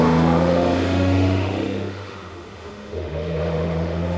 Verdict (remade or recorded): remade